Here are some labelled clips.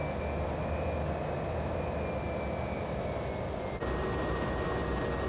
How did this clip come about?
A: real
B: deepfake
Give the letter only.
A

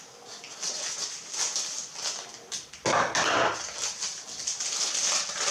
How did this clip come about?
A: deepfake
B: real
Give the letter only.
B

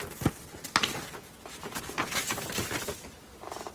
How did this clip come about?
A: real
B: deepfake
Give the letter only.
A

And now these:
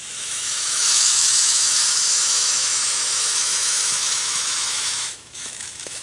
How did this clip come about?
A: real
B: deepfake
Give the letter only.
B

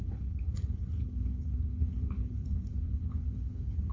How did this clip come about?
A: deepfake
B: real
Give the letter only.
A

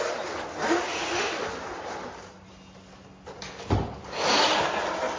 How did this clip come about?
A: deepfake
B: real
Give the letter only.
B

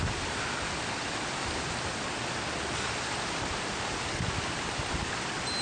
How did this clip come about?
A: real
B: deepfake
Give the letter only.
A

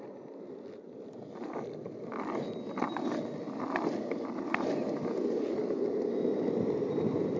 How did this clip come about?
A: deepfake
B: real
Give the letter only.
B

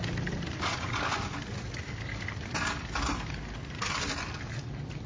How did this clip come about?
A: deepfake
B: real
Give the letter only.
B